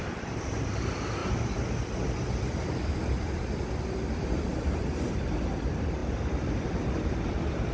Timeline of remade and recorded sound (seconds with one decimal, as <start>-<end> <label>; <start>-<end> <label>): 0.0-7.7 recorded